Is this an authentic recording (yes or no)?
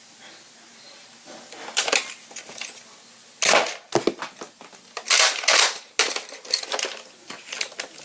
yes